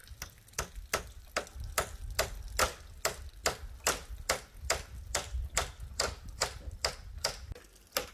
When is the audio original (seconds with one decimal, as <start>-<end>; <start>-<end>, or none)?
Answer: 0.0-8.1